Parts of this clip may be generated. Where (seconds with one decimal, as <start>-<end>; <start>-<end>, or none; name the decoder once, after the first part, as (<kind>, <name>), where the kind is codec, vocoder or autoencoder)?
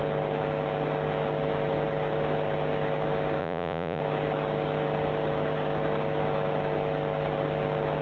3.4-4.0 (vocoder, Vocos)